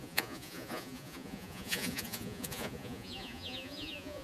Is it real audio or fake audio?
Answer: fake